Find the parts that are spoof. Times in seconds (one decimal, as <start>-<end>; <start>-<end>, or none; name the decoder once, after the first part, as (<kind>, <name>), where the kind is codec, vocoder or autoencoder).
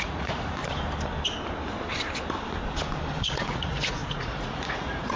0.0-0.6 (vocoder, Vocos); 3.2-5.2